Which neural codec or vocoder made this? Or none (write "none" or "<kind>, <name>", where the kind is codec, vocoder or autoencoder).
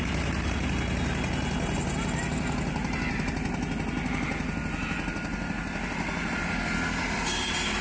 none